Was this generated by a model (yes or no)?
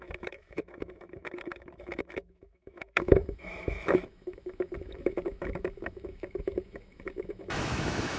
yes